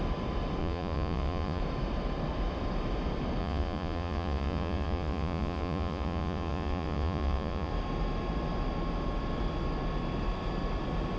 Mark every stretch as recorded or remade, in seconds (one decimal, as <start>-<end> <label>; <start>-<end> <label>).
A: 0.0-0.6 recorded; 0.6-1.6 remade; 1.6-3.4 recorded; 3.4-7.7 remade; 7.7-11.2 recorded